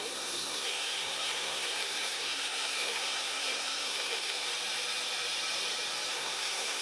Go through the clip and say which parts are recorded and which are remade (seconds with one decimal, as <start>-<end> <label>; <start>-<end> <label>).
0.0-4.5 remade; 4.5-6.1 recorded; 6.1-6.8 remade